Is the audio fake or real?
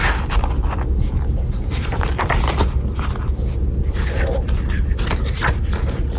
real